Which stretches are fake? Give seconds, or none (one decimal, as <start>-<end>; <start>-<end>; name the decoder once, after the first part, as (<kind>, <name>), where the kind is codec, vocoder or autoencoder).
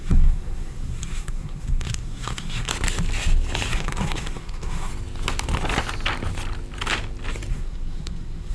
0.0-2.7 (codec, SNAC); 3.7-4.9; 7.5-8.5